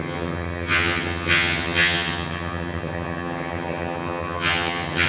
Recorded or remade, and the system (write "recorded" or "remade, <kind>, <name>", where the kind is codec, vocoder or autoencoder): remade, vocoder, HiFi-GAN